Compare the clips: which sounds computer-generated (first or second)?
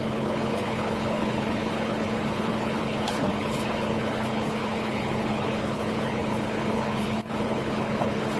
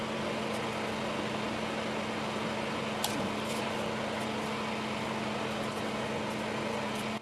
first